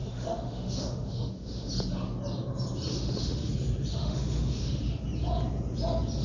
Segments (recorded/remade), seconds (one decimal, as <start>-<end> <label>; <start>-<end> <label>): 0.0-1.7 remade; 1.7-2.9 recorded; 2.9-3.5 remade; 3.5-3.9 recorded; 3.9-4.8 remade; 4.8-6.2 recorded